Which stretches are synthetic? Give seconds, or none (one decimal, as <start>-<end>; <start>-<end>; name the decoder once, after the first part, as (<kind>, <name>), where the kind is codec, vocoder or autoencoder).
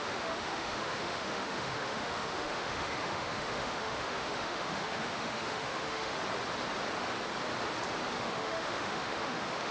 0.0-6.1 (autoencoder, DAC-VAE); 8.2-9.7